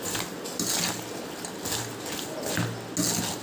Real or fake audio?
real